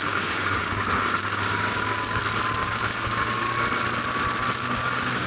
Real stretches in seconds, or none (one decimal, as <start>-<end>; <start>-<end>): 2.2-2.6; 3.5-4.6